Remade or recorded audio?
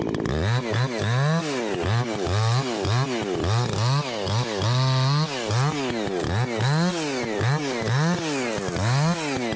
recorded